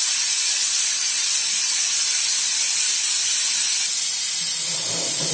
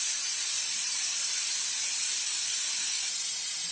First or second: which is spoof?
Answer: second